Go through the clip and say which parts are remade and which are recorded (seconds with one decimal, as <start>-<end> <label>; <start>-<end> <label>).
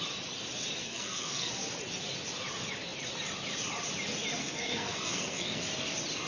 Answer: 0.0-0.8 recorded; 0.8-1.5 remade; 1.5-4.4 recorded; 4.4-5.6 remade; 5.6-6.3 recorded